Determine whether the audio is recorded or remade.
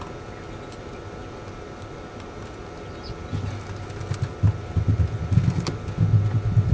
recorded